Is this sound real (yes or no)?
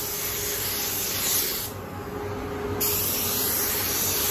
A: yes